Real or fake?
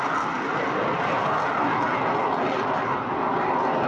real